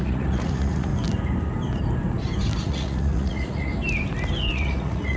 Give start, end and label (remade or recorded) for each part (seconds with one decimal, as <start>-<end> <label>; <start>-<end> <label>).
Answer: 0.0-0.9 remade; 0.9-2.6 recorded; 2.6-3.7 remade; 3.7-4.5 recorded; 4.5-5.2 remade